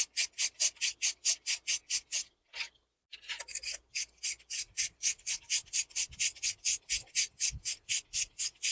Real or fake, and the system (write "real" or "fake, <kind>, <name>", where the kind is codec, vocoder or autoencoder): real